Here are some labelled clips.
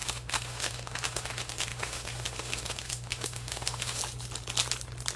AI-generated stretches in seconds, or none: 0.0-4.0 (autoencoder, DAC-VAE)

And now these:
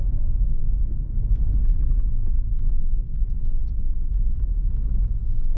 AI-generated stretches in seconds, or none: 0.0-0.6 (autoencoder, DAC-VAE); 1.3-5.6